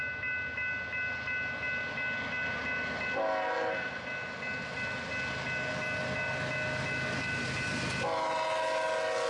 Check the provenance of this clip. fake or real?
real